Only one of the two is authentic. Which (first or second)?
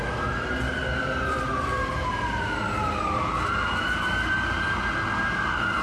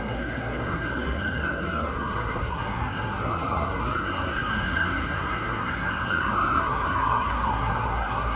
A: first